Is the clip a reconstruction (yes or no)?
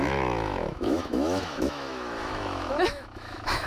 yes